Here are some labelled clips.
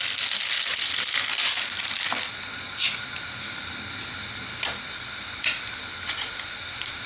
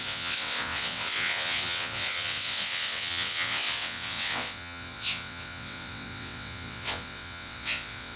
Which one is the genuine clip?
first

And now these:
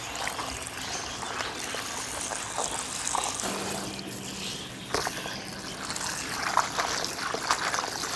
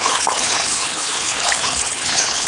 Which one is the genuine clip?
first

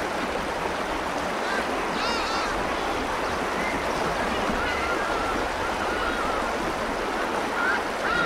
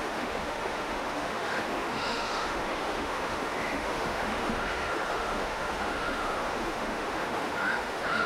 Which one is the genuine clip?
first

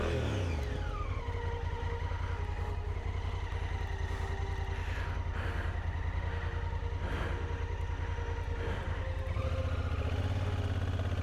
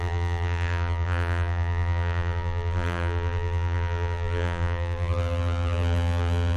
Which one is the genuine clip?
first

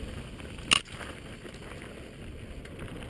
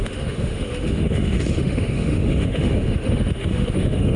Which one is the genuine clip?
first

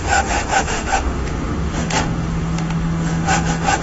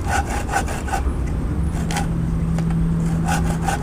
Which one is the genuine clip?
second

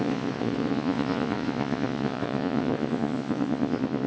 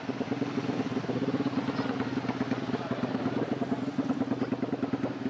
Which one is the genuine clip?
second